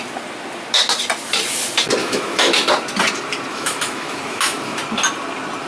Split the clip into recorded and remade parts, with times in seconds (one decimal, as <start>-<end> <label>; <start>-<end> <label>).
0.0-2.0 recorded; 2.0-2.7 remade; 2.7-3.5 recorded; 3.5-4.8 remade; 4.8-5.7 recorded